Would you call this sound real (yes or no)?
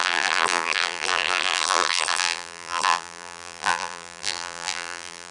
no